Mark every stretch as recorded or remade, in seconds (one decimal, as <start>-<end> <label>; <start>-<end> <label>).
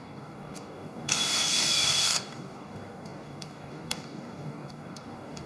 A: 0.0-5.5 remade